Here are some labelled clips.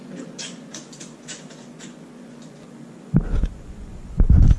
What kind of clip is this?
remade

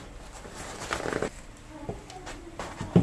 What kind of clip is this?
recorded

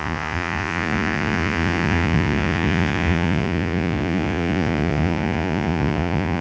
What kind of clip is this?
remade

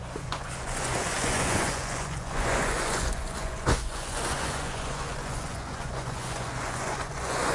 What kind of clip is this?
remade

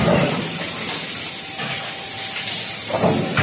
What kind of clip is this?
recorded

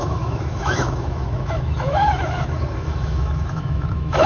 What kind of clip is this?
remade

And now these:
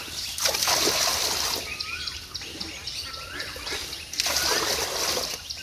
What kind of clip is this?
recorded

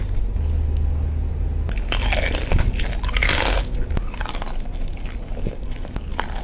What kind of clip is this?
recorded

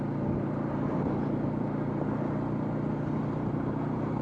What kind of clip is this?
recorded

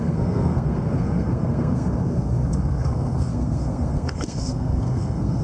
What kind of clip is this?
remade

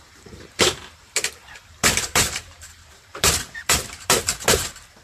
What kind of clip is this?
remade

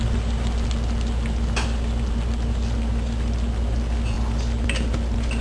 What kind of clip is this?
recorded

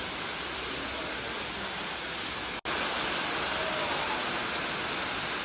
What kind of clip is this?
recorded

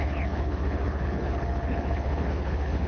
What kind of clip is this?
remade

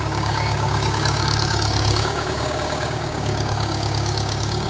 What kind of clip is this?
remade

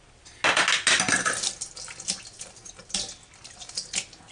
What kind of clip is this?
recorded